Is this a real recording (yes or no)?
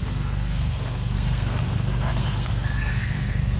no